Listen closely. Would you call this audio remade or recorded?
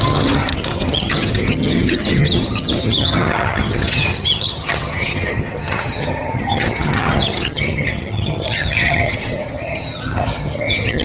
remade